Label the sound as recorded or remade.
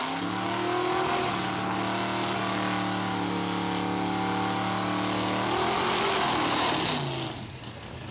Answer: recorded